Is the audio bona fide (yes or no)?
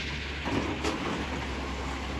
yes